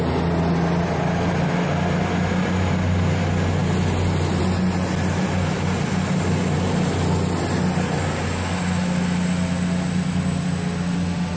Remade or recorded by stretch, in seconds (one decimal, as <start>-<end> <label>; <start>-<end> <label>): 0.0-11.4 recorded